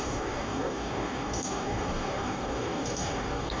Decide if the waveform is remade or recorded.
remade